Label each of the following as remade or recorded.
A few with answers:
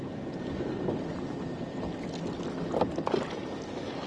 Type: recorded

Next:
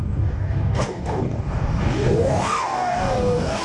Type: remade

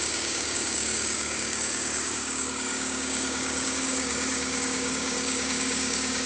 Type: remade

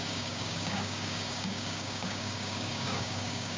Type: remade